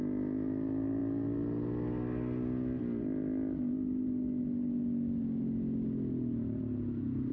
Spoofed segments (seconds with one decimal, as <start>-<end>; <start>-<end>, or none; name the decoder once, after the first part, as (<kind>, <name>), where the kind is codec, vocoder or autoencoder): none